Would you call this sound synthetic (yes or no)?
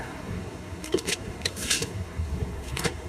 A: yes